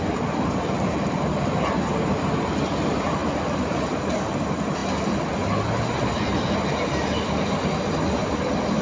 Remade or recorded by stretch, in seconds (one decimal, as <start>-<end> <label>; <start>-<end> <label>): 0.0-8.2 recorded; 8.2-8.8 remade